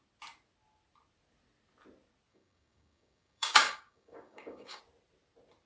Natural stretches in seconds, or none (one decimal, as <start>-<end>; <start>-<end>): 0.0-2.3; 4.8-5.7